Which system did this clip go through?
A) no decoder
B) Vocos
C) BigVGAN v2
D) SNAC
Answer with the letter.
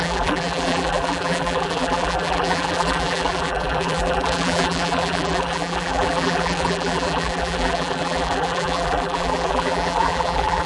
C